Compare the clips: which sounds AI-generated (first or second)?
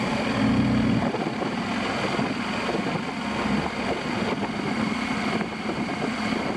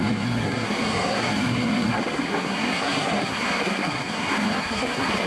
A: second